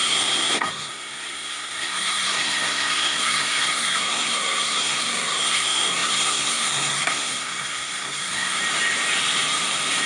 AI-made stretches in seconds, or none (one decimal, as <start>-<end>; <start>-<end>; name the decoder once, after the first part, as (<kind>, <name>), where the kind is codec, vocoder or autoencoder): 0.0-8.6 (codec, SNAC)